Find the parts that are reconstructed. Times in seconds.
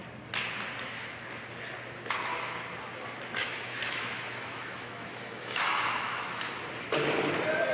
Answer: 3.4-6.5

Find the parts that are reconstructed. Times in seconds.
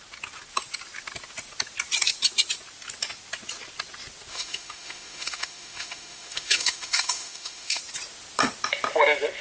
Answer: 4.3-7.8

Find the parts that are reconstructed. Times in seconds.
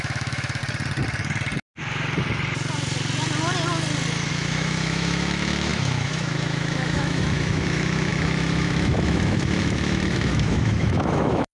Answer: 0.0-0.6; 4.3-11.5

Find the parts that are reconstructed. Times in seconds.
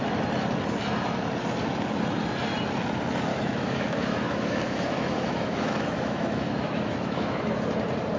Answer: 3.3-7.6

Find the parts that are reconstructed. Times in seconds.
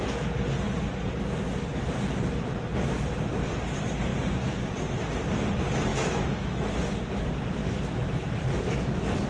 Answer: 5.9-6.8